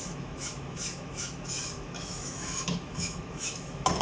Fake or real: fake